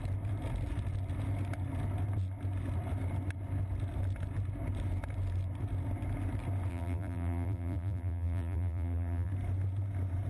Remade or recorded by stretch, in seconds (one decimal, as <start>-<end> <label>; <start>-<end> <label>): 0.0-6.7 recorded; 6.7-9.3 remade; 9.3-10.3 recorded